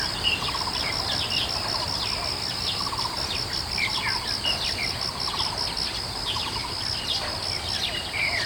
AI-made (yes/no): no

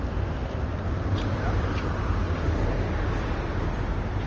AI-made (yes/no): no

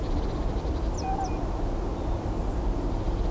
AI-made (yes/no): no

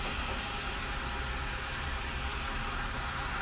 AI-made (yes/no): no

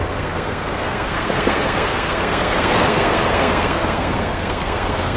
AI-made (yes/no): yes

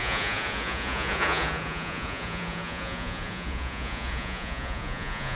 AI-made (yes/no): yes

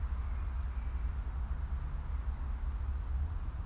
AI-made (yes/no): no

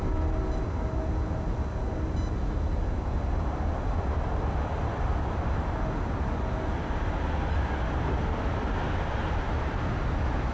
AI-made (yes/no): no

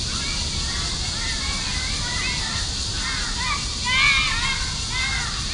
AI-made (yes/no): no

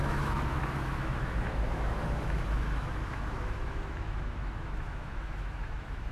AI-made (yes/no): yes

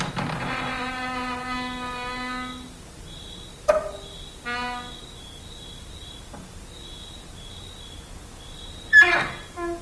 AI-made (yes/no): no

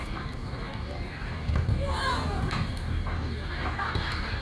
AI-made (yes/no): yes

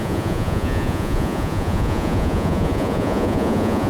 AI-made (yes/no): yes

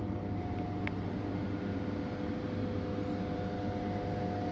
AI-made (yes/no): no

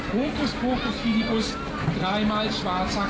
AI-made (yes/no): no